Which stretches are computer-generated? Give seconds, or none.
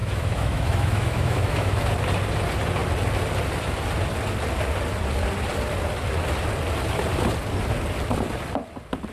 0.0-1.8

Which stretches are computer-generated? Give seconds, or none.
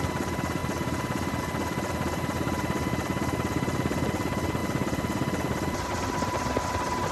none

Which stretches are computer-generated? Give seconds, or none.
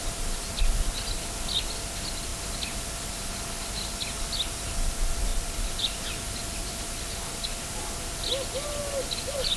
none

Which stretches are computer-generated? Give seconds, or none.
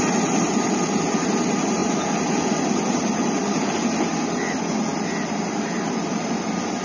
none